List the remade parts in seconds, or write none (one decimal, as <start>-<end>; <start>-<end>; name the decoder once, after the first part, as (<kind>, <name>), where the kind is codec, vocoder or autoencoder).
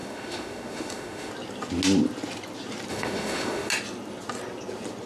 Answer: 0.0-1.3 (autoencoder, DAC-VAE); 2.9-3.7